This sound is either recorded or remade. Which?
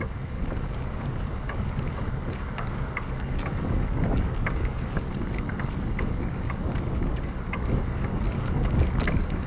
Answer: remade